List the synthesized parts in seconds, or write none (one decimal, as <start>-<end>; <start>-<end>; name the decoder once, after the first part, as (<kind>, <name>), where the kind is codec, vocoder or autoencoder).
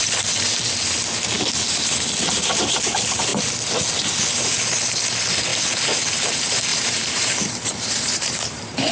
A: 6.7-8.9 (vocoder, BigVGAN v2)